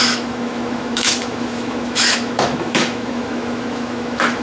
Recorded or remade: remade